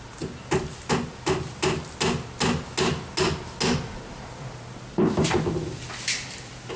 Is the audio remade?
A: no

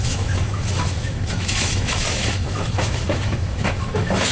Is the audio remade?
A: yes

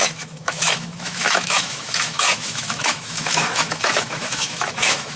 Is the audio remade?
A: yes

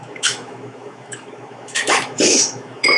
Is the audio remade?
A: yes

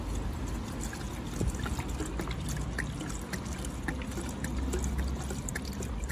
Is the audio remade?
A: no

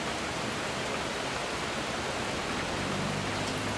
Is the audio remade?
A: no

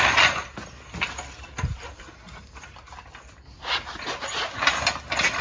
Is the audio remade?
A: no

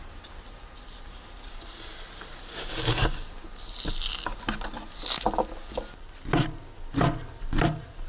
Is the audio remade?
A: no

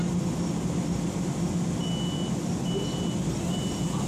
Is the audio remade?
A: no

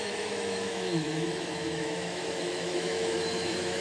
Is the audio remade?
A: yes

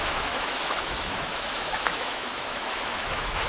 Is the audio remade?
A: yes